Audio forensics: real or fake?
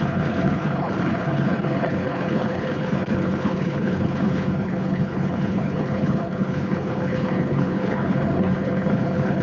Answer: fake